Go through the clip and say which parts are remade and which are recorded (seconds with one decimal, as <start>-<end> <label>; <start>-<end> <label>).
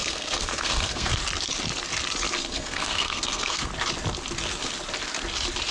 0.0-1.2 remade; 1.2-2.4 recorded; 2.4-3.7 remade; 3.7-5.7 recorded